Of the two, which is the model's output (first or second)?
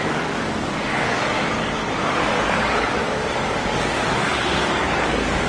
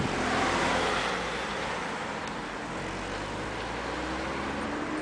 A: first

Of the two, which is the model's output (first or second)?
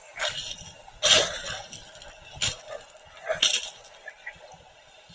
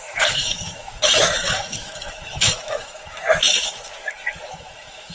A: second